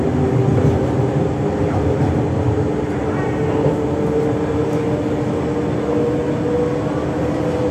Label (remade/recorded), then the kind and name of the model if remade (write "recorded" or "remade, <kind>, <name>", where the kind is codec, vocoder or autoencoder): recorded